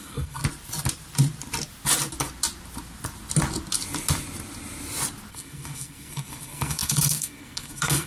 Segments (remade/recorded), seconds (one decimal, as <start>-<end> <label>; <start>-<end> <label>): 0.0-0.4 remade; 0.4-5.3 recorded; 5.3-8.1 remade

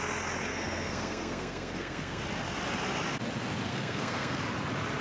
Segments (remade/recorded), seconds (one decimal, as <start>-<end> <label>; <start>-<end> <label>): 0.0-0.5 recorded; 0.5-2.2 remade; 2.2-3.7 recorded; 3.7-4.4 remade; 4.4-5.0 recorded

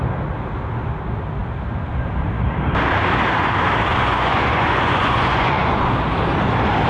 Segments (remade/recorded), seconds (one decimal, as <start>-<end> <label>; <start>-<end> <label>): 0.0-3.9 recorded; 3.9-5.9 remade; 5.9-6.9 recorded

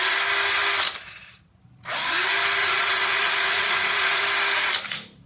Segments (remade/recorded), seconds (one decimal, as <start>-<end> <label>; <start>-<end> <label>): 0.0-2.6 recorded; 2.6-4.2 remade; 4.2-5.3 recorded

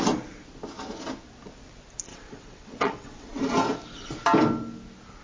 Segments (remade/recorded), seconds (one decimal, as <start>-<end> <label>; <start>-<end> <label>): 0.0-2.1 recorded; 2.1-3.4 remade; 3.4-5.2 recorded